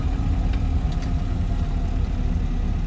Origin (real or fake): real